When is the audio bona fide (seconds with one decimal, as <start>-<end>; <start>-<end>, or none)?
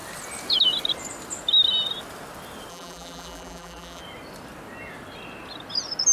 0.0-2.7; 4.0-6.1